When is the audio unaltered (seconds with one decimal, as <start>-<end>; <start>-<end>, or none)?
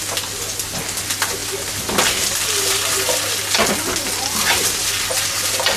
0.0-5.8